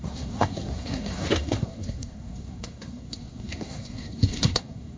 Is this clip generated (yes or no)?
yes